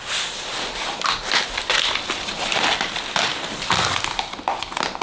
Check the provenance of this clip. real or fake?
real